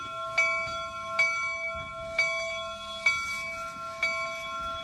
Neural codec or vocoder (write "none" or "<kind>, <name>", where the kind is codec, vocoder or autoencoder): none